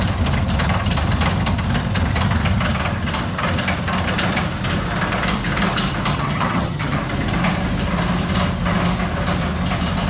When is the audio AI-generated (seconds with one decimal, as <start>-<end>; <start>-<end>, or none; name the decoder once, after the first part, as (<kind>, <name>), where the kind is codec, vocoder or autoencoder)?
6.1-7.0 (vocoder, HiFi-GAN)